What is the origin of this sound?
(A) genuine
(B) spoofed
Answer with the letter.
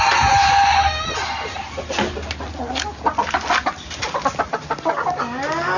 A